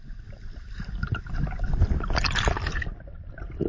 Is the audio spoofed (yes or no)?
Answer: no